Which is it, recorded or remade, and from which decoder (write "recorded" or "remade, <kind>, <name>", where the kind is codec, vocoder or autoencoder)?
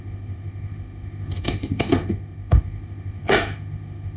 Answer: remade, autoencoder, DAC-VAE